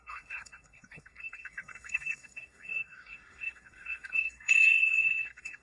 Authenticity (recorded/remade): remade